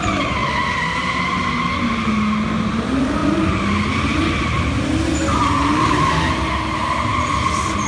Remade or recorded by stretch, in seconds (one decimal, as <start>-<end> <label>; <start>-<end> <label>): 0.0-7.9 recorded